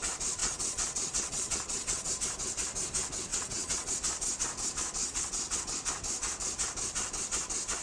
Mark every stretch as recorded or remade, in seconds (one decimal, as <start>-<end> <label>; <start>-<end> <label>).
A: 0.0-0.4 recorded; 0.4-2.1 remade; 2.1-3.3 recorded; 3.3-3.9 remade; 3.9-5.0 recorded; 5.0-5.6 remade; 5.6-7.8 recorded